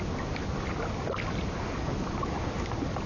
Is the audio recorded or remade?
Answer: recorded